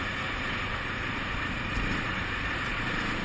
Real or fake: fake